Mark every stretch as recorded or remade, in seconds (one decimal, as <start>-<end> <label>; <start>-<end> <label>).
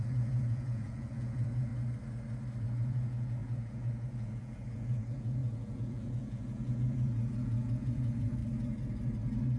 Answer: 0.0-1.7 remade; 1.7-2.6 recorded; 2.6-8.4 remade; 8.4-9.6 recorded